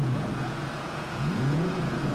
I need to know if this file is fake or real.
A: fake